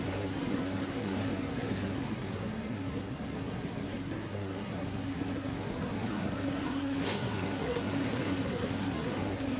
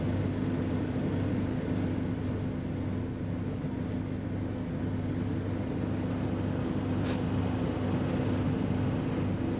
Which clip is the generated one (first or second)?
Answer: first